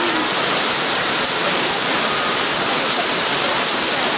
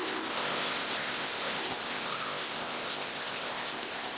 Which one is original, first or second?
first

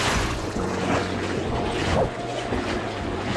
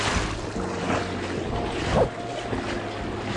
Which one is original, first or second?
second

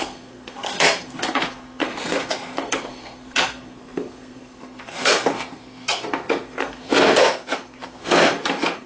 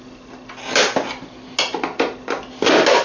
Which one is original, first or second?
second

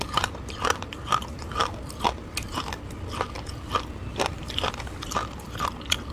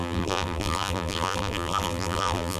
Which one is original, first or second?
first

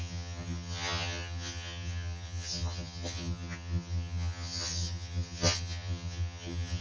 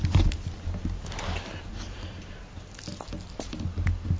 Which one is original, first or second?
second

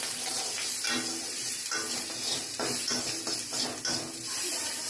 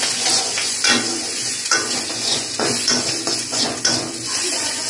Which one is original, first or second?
first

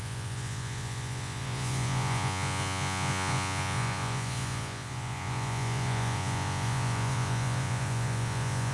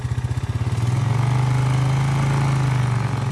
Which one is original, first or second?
second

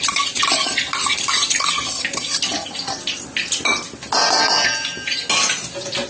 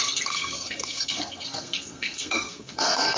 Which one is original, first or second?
first